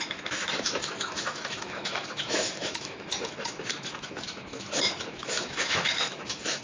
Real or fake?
fake